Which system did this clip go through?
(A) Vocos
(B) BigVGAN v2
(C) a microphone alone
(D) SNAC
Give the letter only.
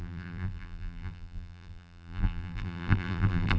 B